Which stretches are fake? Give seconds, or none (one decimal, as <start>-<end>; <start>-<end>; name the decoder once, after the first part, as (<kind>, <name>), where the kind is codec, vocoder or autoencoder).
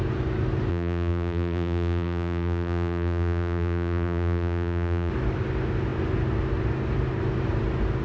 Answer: 0.7-5.1 (vocoder, BigVGAN v2)